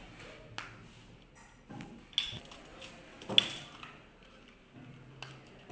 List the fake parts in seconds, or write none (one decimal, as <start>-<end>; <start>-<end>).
none